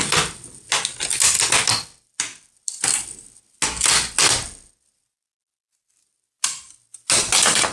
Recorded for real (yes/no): yes